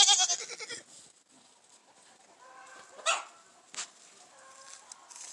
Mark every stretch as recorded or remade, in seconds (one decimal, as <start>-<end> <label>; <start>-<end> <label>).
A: 0.0-5.3 recorded